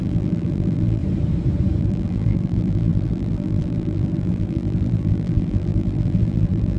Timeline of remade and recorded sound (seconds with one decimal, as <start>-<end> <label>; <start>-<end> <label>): 0.0-1.0 remade; 1.0-1.8 recorded; 1.8-6.8 remade